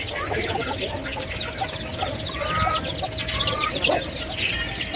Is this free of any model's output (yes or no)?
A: yes